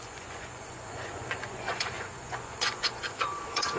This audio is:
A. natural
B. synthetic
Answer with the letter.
B